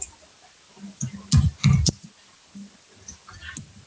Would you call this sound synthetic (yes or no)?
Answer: no